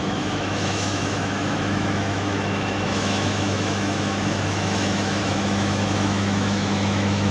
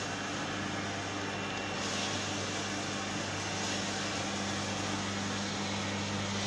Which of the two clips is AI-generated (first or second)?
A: first